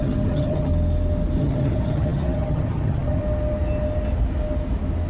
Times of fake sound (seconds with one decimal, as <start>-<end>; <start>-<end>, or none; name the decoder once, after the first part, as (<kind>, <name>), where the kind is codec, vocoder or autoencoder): 0.0-0.7 (vocoder, HiFi-GAN); 1.4-3.2